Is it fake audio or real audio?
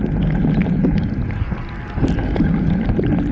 real